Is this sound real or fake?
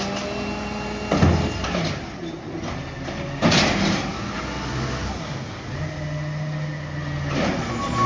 real